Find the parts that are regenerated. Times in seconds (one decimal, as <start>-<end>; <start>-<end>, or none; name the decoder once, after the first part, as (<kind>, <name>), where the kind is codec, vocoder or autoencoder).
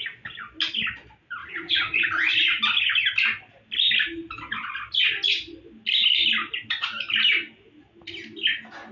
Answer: 1.4-2.3 (vocoder, Vocos)